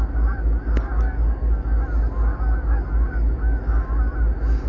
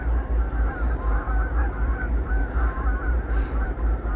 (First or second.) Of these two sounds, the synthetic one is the second